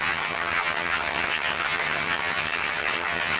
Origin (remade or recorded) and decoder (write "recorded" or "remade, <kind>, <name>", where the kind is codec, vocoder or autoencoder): remade, vocoder, HiFi-GAN